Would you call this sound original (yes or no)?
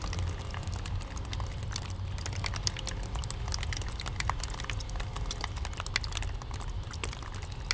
yes